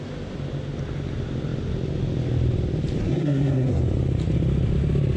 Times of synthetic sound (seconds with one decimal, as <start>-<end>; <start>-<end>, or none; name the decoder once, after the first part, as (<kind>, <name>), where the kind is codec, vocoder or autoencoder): 3.0-3.8 (codec, SNAC)